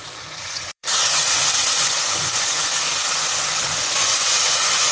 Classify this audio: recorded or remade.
remade